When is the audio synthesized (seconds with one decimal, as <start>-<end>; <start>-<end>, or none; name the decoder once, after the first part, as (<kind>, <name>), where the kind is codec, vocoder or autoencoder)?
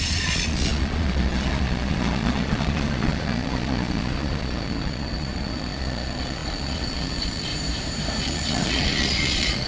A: 0.0-7.5 (vocoder, Vocos); 8.2-9.7